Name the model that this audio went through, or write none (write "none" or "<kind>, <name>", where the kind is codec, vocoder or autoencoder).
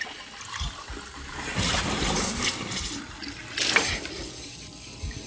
none